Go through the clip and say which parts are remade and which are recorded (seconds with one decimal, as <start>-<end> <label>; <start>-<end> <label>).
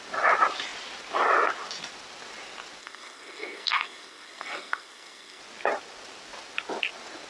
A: 0.0-2.8 recorded; 2.8-5.4 remade; 5.4-7.3 recorded